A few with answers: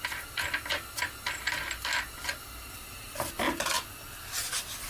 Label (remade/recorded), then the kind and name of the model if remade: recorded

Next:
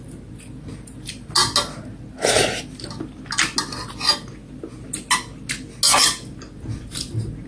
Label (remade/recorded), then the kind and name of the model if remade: recorded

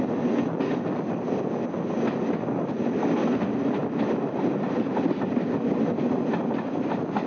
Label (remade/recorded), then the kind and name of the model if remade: recorded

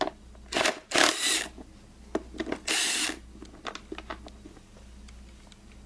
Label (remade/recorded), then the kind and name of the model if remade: recorded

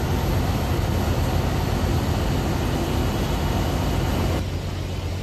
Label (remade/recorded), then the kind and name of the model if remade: recorded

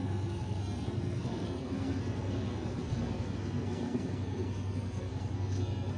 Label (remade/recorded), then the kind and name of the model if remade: remade, codec, SNAC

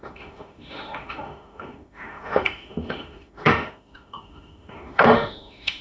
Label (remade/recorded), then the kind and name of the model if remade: remade, autoencoder, DAC-VAE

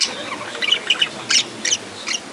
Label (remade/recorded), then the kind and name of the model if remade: recorded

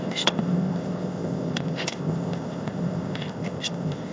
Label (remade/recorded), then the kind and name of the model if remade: remade, codec, ZipCodec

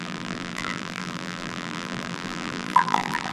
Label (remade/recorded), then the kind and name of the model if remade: remade, vocoder, BigVGAN v2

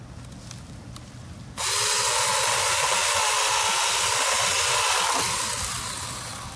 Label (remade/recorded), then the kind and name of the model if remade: recorded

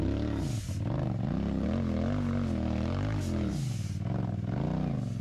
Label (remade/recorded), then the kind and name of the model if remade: recorded